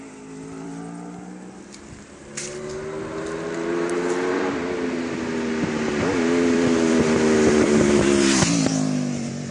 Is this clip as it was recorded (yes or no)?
no